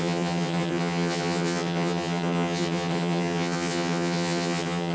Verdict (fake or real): fake